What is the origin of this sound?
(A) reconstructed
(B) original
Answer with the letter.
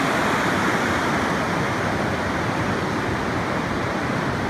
B